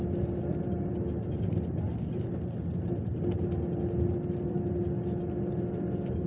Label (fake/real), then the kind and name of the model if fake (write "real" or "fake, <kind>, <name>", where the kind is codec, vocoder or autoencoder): real